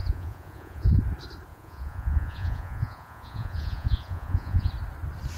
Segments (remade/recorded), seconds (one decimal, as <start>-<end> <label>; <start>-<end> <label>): 0.0-1.0 remade; 1.0-1.5 recorded; 1.5-4.7 remade; 4.7-5.4 recorded